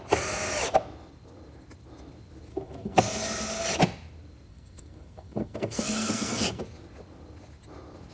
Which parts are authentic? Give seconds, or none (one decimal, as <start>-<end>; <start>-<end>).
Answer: 0.0-2.5; 3.0-4.5; 6.6-8.1